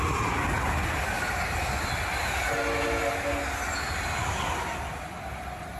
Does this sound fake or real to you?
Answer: real